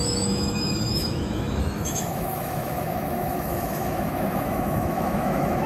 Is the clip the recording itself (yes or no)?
no